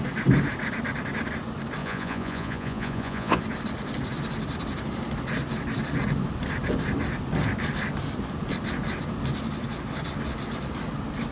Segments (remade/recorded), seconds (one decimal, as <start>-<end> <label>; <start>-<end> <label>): 0.0-1.8 recorded; 1.8-3.4 remade; 3.4-11.3 recorded